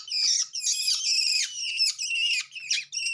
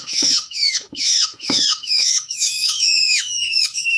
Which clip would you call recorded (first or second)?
first